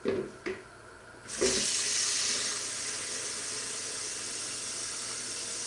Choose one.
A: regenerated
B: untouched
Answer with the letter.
B